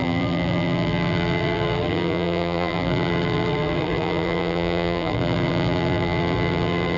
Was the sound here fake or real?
fake